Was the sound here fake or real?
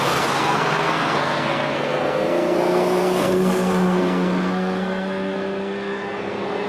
fake